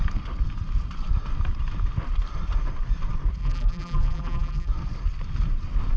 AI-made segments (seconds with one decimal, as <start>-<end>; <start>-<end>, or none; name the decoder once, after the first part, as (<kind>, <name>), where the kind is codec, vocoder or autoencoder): 3.4-4.7 (vocoder, BigVGAN v2)